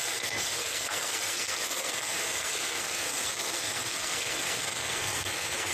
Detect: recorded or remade remade